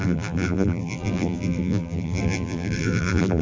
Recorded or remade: remade